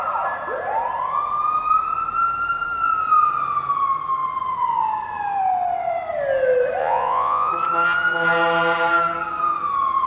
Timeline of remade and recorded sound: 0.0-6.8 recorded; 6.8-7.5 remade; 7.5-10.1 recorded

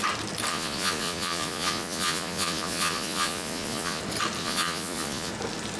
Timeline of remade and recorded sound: 0.0-0.5 recorded; 0.5-4.0 remade; 4.0-4.4 recorded; 4.4-5.3 remade; 5.3-5.8 recorded

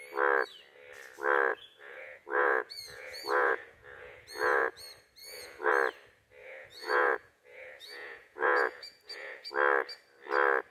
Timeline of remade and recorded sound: 0.0-1.5 recorded; 1.5-4.8 remade; 4.8-5.2 recorded; 5.2-5.7 remade; 5.7-6.4 recorded; 6.4-9.5 remade; 9.5-10.7 recorded